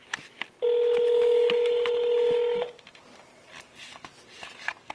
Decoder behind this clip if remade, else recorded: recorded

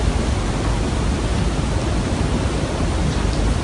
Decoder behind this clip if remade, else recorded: recorded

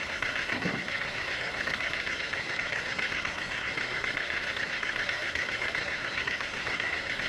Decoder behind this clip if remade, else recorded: remade, codec, SNAC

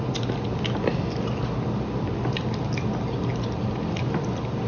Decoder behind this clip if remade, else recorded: recorded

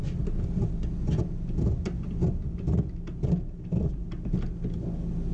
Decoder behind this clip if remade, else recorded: recorded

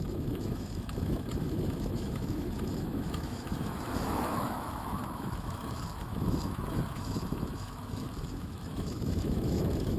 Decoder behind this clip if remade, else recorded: remade, autoencoder, DAC-VAE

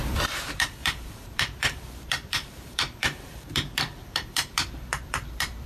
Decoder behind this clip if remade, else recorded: remade, vocoder, BigVGAN v2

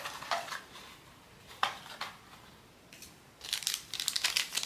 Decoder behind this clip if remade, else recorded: recorded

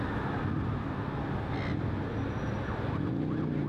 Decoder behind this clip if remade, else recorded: recorded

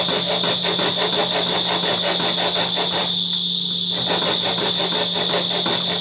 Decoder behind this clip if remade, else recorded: recorded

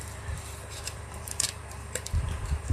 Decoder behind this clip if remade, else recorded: remade, vocoder, BigVGAN v2